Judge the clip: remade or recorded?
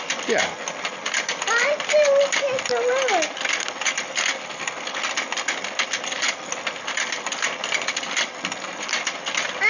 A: recorded